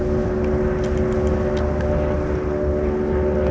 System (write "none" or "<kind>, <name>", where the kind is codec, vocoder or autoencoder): none